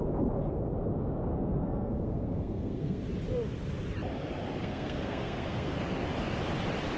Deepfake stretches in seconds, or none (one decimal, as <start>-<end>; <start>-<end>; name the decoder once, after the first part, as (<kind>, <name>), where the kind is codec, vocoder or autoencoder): 1.3-3.0 (codec, SNAC); 4.6-5.7